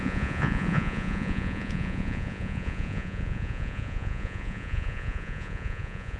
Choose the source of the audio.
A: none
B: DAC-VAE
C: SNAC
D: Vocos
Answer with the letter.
D